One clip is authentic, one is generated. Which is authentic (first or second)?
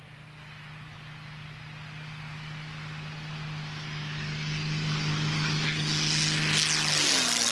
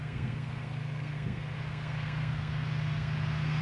first